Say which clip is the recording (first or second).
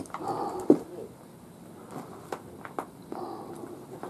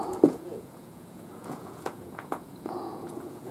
first